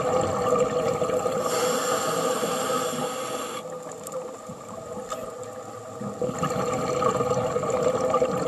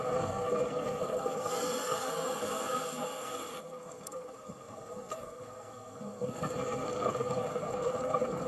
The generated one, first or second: second